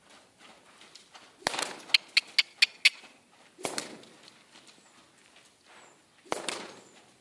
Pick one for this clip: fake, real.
real